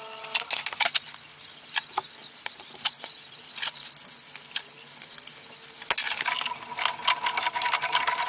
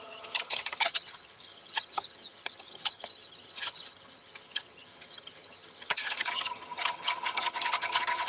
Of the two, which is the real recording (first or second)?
first